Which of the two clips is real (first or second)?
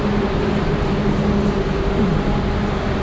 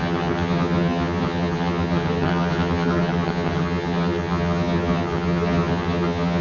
first